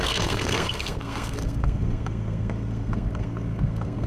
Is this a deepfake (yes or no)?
yes